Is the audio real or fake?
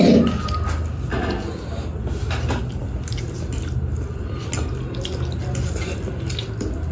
real